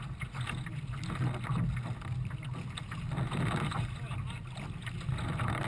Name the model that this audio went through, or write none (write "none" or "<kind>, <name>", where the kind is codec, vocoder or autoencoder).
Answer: none